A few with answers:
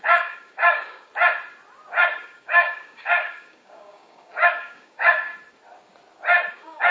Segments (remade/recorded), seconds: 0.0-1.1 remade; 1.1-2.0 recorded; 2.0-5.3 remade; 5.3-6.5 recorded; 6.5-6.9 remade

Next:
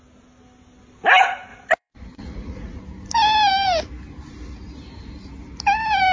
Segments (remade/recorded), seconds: 0.0-1.5 recorded; 1.5-2.8 remade; 2.8-6.1 recorded

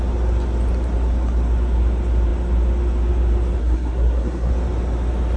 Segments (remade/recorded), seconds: 0.0-3.6 recorded; 3.6-4.5 remade; 4.5-5.4 recorded

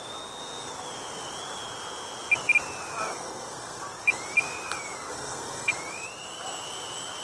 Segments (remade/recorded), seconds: 0.0-3.1 recorded; 3.1-3.8 remade; 3.8-5.1 recorded; 5.1-5.7 remade; 5.7-7.2 recorded

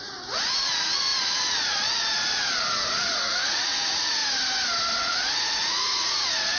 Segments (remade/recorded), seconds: 0.0-4.2 remade; 4.2-5.0 recorded; 5.0-6.6 remade

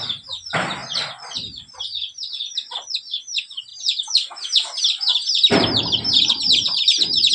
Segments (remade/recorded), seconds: 0.0-0.8 recorded; 0.8-2.9 remade; 2.9-3.7 recorded; 3.7-7.3 remade

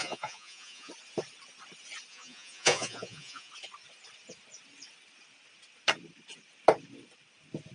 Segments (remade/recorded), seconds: 0.0-0.9 remade; 0.9-2.1 recorded; 2.1-3.5 remade; 3.5-7.7 recorded

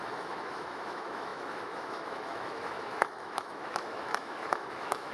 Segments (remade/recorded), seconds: 0.0-5.1 remade